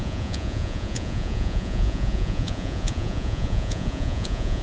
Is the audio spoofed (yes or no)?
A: yes